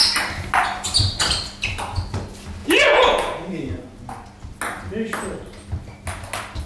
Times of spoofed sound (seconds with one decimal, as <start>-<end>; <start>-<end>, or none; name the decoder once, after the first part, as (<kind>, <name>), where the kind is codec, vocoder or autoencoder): 2.6-3.5 (vocoder, Vocos)